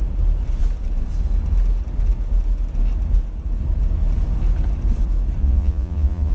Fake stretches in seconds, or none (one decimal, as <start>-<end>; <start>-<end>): 5.4-6.3